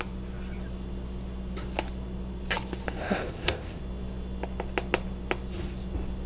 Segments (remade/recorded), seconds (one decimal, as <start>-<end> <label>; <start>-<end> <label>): 0.0-3.0 recorded; 3.0-3.8 remade; 3.8-6.3 recorded